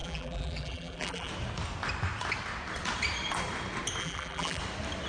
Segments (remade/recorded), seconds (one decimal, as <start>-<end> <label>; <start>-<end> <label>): 0.0-1.3 remade; 1.3-4.0 recorded; 4.0-4.6 remade; 4.6-5.1 recorded